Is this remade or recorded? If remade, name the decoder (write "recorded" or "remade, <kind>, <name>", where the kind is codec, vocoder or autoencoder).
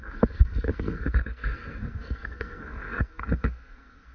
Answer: remade, codec, SNAC